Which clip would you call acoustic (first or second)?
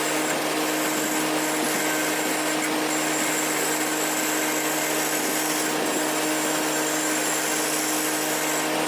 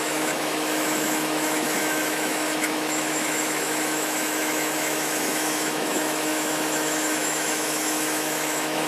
first